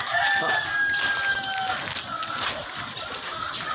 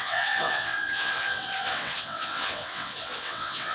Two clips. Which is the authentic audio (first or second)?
first